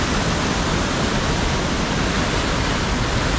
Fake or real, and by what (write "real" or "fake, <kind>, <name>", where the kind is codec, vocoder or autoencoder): real